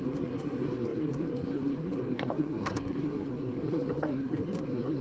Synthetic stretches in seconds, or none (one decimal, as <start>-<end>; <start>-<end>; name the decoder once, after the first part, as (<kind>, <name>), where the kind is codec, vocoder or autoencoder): 0.0-5.0 (codec, SNAC)